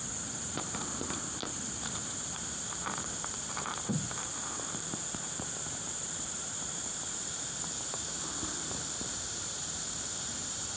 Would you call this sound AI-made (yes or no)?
yes